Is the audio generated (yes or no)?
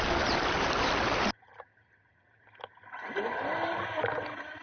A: no